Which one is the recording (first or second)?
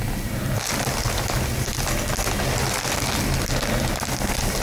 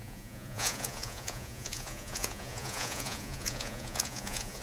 first